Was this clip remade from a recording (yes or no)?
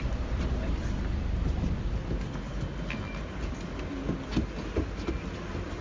no